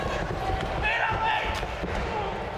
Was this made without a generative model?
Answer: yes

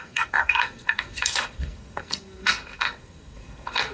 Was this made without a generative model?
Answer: no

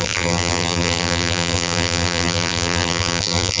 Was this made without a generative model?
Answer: no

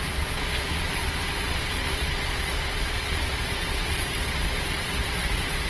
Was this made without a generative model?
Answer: no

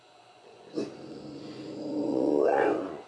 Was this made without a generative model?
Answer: no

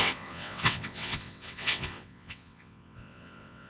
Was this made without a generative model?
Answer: no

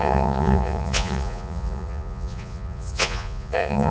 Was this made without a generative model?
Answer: no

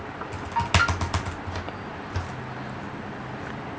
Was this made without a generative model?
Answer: yes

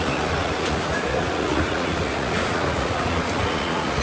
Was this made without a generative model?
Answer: no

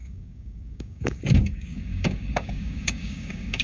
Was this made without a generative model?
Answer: no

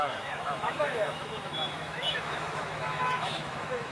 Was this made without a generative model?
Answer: no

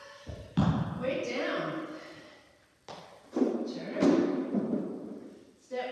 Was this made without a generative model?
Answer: no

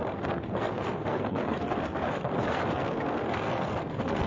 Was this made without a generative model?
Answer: no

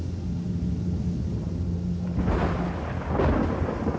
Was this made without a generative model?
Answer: yes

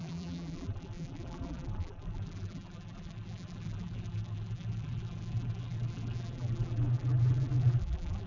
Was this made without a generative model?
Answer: no